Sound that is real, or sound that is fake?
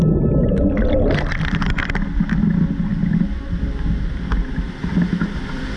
real